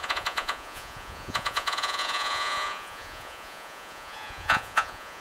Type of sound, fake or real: fake